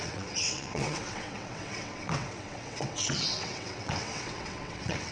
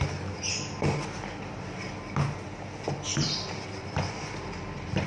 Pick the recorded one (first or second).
second